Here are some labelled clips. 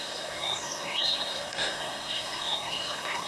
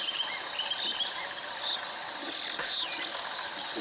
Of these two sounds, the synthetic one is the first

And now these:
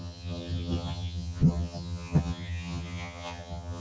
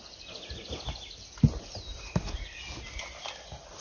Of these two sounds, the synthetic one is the first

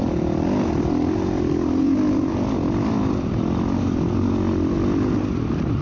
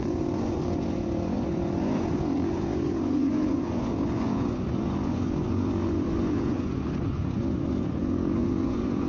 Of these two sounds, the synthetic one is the second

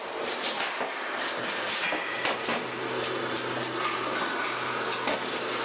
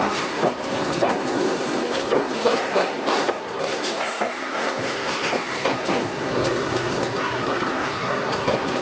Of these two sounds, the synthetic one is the second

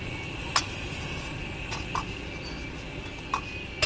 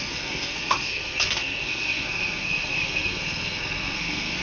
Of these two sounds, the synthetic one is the second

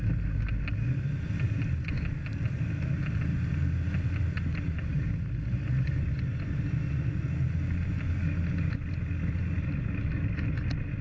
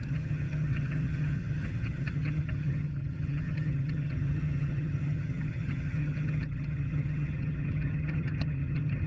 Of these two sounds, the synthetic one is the second